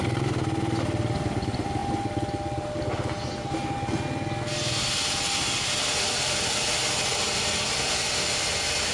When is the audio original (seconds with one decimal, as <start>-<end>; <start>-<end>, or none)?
0.0-8.9